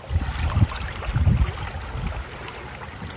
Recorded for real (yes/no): yes